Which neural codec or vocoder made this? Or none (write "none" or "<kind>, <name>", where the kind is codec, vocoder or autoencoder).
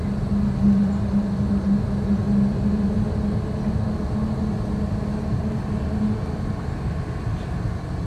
none